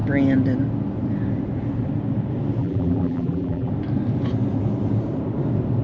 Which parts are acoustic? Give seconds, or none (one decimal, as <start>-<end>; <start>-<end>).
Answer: 0.0-2.6; 3.7-5.8